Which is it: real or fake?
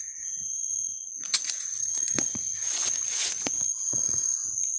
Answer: fake